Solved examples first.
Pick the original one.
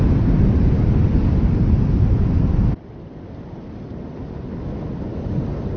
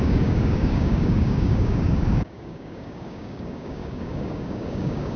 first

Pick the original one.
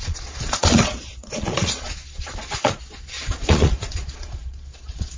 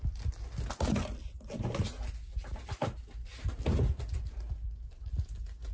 second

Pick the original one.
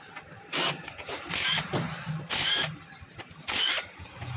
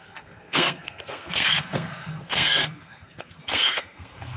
first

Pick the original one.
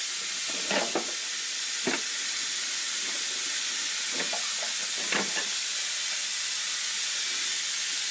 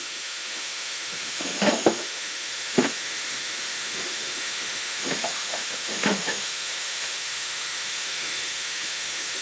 first